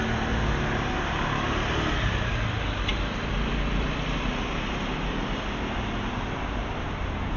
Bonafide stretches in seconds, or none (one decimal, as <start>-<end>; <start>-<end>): 0.0-7.4